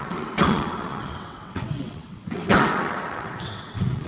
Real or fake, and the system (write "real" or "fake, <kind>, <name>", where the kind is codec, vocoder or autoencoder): fake, vocoder, WaveNeXt